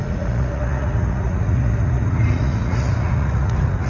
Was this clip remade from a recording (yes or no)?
yes